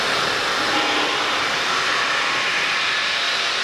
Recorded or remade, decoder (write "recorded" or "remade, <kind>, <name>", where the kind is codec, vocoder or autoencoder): recorded